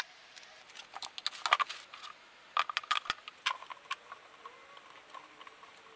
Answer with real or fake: real